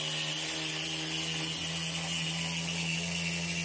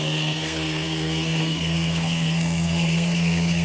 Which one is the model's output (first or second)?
second